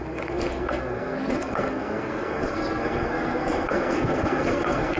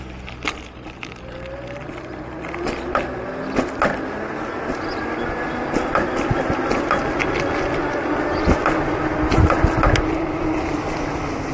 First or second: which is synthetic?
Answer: first